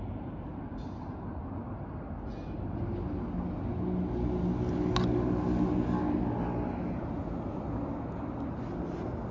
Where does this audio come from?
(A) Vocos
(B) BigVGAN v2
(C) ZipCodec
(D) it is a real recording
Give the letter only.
D